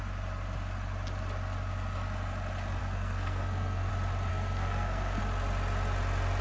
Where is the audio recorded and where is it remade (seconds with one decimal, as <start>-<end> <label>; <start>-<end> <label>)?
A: 0.0-2.8 recorded; 2.8-3.9 remade; 3.9-4.3 recorded; 4.3-5.2 remade; 5.2-6.4 recorded